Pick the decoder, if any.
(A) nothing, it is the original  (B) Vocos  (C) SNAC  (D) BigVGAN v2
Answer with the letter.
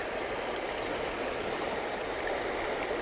A